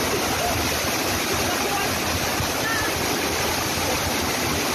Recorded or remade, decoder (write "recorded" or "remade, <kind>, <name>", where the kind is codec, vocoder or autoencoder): recorded